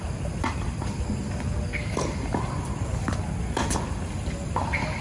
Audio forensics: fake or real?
fake